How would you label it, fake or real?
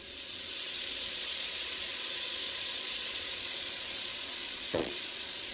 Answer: fake